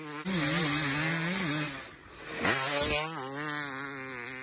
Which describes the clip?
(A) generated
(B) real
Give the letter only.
B